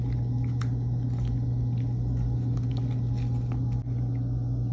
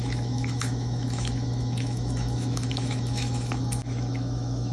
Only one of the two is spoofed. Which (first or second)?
second